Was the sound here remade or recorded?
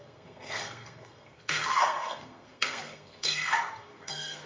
remade